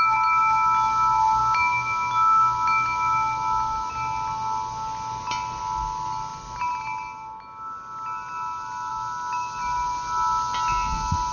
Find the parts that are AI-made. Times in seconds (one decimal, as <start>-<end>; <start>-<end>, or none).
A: none